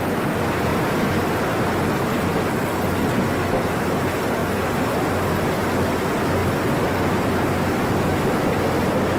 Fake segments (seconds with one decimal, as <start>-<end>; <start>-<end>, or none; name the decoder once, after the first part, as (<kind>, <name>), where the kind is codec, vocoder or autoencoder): none

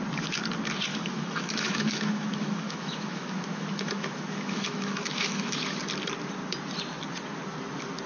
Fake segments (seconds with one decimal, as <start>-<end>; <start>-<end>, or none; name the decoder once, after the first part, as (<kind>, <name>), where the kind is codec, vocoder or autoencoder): 0.9-5.8 (autoencoder, DAC-VAE)

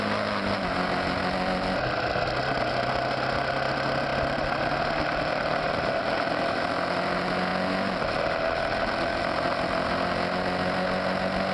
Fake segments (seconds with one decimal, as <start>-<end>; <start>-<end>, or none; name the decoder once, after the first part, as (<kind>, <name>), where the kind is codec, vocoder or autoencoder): none